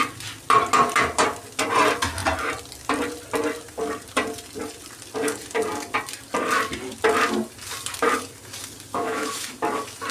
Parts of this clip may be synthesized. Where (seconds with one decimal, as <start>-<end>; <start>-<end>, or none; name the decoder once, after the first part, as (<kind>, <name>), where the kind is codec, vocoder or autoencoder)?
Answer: 8.9-9.5 (autoencoder, DAC-VAE)